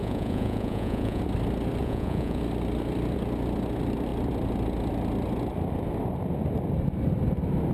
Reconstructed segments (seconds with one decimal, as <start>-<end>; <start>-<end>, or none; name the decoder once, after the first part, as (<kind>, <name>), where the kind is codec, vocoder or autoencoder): 0.0-1.2 (vocoder, Vocos); 1.8-2.4

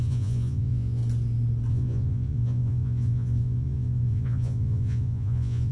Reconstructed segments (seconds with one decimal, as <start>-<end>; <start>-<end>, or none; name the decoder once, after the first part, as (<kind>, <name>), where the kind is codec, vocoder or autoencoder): 0.0-1.0 (vocoder, Vocos); 1.7-5.7

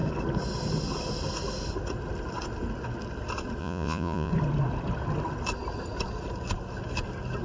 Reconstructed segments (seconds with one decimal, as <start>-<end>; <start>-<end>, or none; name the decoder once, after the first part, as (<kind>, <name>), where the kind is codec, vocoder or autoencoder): 3.6-4.3 (vocoder, Vocos)

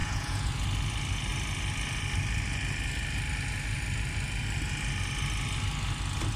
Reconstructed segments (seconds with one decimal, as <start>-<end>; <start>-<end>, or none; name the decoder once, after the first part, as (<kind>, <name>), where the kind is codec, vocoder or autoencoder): 0.0-0.5 (vocoder, Vocos)

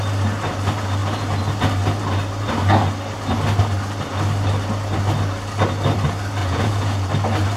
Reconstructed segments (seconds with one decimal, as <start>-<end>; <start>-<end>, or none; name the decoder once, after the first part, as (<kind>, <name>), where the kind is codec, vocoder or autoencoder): 6.4-7.1 (vocoder, Vocos)